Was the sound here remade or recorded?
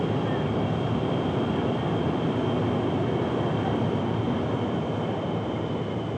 recorded